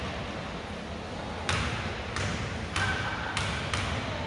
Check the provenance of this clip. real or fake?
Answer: real